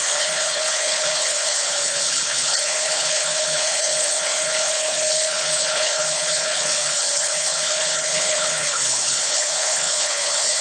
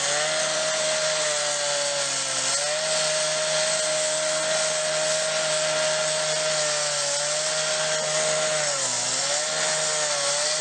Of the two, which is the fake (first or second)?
first